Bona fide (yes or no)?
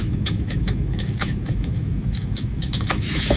no